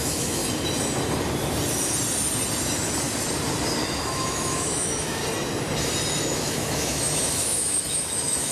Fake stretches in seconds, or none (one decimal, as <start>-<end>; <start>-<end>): 0.0-0.4; 4.0-5.2; 6.2-8.5